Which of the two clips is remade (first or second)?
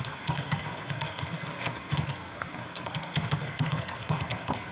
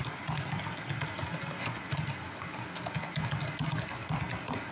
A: first